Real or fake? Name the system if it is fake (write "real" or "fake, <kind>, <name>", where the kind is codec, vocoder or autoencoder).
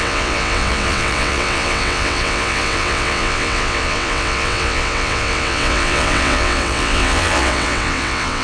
fake, vocoder, WaveNeXt